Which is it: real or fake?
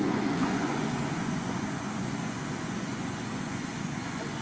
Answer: fake